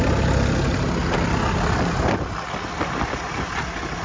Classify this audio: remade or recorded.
recorded